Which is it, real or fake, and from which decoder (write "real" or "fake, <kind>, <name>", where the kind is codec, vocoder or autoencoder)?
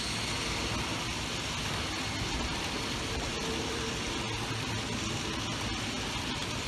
real